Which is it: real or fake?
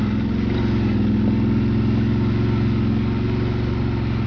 real